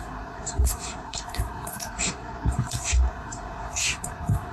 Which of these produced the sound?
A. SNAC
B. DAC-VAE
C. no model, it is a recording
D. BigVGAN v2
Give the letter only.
A